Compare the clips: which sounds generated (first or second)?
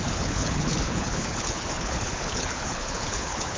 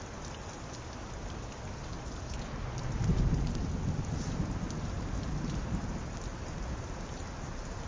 first